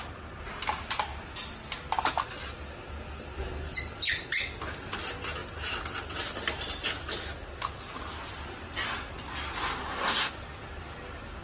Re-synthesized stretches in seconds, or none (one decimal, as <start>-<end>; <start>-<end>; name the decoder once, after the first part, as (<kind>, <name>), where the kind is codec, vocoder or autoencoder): 9.8-10.3 (codec, SNAC)